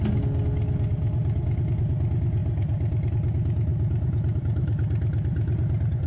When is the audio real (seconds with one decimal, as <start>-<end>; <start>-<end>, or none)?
0.0-6.1